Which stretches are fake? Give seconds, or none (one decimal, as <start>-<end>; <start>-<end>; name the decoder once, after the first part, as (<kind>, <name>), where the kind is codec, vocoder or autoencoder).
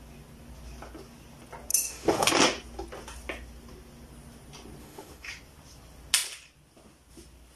1.7-2.3 (autoencoder, DAC-VAE); 4.8-5.3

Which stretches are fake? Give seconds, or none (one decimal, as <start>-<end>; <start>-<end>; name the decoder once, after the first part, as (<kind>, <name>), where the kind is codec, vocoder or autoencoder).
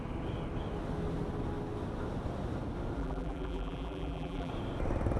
3.0-4.5 (vocoder, BigVGAN v2)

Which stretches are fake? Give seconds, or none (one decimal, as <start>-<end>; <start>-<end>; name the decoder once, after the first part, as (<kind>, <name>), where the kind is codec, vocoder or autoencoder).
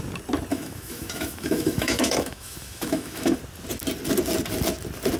0.5-3.4 (autoencoder, DAC-VAE)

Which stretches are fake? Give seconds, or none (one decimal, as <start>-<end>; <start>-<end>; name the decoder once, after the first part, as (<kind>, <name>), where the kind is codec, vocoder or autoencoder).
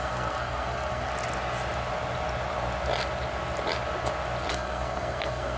0.0-1.1 (codec, SNAC); 4.5-5.6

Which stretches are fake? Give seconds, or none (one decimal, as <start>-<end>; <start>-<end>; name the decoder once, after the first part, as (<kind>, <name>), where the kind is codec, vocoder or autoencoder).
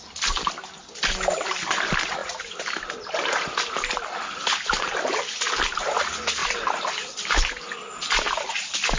2.2-3.7 (vocoder, BigVGAN v2); 6.4-8.5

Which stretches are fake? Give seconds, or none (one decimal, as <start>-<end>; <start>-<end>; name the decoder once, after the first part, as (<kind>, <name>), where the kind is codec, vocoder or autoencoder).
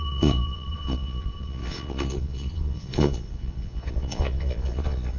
0.0-5.2 (vocoder, Vocos)